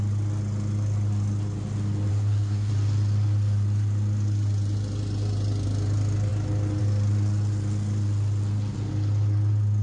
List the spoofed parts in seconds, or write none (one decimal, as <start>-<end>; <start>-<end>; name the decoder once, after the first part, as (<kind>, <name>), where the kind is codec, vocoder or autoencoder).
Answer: 2.1-2.7 (codec, SNAC)